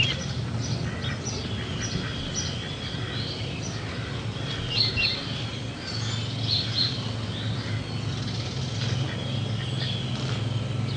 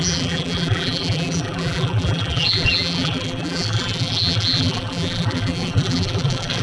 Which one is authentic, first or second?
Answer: first